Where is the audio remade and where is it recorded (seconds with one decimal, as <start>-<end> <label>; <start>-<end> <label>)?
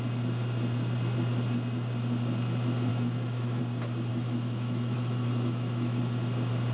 0.0-2.9 recorded; 2.9-3.6 remade; 3.6-4.1 recorded; 4.1-6.0 remade; 6.0-6.7 recorded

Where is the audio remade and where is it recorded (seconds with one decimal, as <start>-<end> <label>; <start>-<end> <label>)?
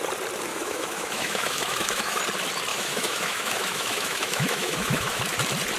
0.0-0.5 recorded; 0.5-2.2 remade; 2.2-2.7 recorded; 2.7-5.2 remade; 5.2-5.8 recorded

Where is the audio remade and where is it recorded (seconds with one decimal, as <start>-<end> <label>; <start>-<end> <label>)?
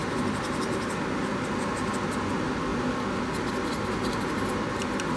0.0-5.2 recorded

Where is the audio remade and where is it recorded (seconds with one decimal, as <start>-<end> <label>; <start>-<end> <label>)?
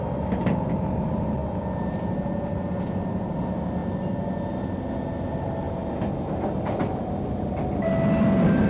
0.0-8.7 recorded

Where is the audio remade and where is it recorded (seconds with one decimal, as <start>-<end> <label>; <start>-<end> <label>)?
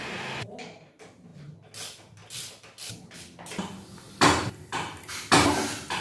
0.0-6.0 recorded